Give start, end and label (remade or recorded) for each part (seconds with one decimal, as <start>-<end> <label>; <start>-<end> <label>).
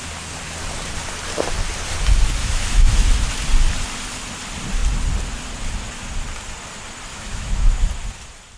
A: 0.0-2.4 recorded; 2.4-3.1 remade; 3.1-7.1 recorded; 7.1-7.7 remade; 7.7-8.6 recorded